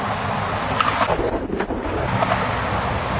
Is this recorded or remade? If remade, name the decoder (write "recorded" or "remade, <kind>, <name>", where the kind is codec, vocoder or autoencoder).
recorded